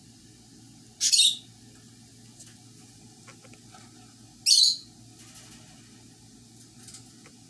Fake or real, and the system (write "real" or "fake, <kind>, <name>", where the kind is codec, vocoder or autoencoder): real